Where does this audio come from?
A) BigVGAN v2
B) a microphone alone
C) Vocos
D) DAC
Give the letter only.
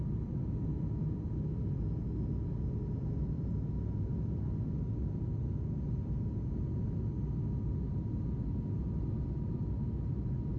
B